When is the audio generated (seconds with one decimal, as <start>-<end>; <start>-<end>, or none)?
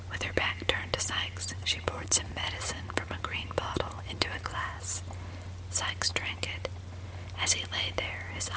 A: 1.6-4.8